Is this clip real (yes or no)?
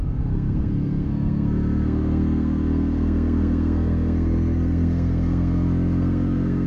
no